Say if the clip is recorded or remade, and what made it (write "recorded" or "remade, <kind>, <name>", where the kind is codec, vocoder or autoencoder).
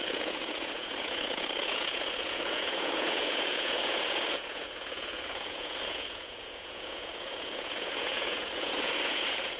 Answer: remade, vocoder, Vocos